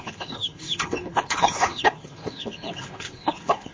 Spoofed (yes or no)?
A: yes